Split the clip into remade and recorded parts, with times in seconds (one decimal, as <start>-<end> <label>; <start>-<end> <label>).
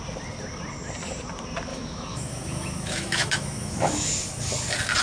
0.0-1.7 recorded; 1.7-4.1 remade; 4.1-5.0 recorded